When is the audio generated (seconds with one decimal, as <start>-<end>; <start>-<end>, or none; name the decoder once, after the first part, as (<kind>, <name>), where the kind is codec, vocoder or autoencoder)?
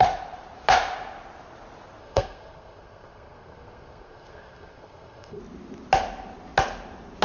2.0-5.4 (codec, SNAC)